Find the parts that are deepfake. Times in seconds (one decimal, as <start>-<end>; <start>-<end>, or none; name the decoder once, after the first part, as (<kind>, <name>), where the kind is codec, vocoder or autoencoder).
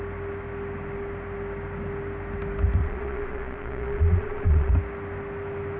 2.8-4.7 (vocoder, Vocos)